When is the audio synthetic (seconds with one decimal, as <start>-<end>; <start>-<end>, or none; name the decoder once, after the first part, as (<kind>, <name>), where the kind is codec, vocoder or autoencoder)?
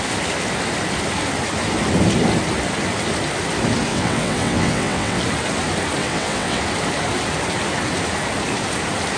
3.9-5.2 (vocoder, WaveNeXt); 6.0-6.6